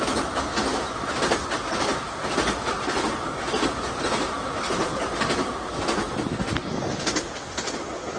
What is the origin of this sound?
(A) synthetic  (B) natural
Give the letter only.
B